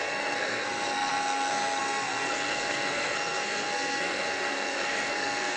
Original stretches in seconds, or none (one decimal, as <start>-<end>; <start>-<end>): none